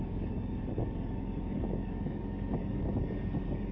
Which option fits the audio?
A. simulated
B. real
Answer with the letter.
A